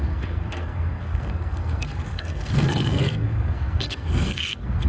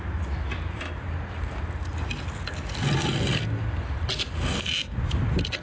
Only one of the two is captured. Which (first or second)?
second